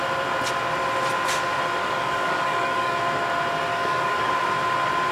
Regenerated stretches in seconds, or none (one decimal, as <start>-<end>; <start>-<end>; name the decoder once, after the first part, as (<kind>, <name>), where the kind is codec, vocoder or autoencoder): 1.8-3.0 (codec, DAC); 3.7-4.3

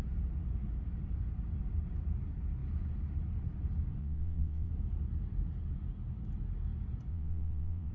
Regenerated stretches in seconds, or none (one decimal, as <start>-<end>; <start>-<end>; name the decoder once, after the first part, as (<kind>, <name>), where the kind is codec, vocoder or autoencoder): 4.0-4.7 (vocoder, WaveNeXt); 7.1-7.9

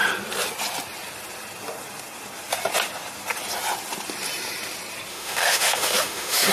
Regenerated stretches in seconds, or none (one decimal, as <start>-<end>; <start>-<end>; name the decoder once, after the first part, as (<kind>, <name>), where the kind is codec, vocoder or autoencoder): 5.1-6.5 (autoencoder, DAC-VAE)

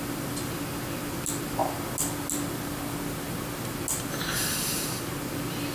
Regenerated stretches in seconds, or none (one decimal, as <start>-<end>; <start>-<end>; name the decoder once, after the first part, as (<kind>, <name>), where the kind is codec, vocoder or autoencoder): none

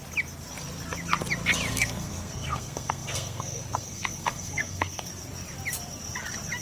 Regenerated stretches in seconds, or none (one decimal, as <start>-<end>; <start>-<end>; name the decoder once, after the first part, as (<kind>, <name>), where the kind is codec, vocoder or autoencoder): 1.7-5.1 (codec, SNAC)

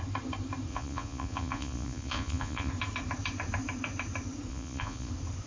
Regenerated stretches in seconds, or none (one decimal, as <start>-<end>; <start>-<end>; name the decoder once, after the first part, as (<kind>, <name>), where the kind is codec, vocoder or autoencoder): 0.7-2.7 (vocoder, Vocos); 4.5-5.1

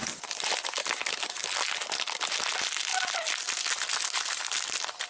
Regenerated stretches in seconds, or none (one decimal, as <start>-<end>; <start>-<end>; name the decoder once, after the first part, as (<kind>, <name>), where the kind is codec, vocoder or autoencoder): none

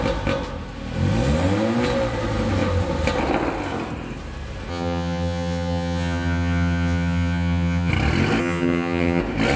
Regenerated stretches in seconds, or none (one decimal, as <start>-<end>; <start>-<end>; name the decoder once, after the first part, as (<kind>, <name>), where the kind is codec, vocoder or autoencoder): 4.7-7.9 (vocoder, HiFi-GAN); 8.4-9.2